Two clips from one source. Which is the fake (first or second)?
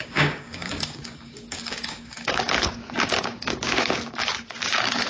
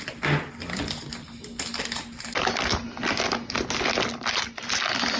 first